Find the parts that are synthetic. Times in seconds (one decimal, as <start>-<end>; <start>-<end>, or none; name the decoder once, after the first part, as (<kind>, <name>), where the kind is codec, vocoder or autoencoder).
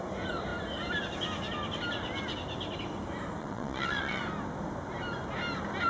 3.4-4.2 (vocoder, WaveNeXt)